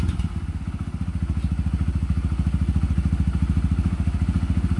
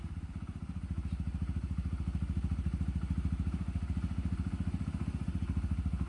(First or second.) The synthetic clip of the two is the second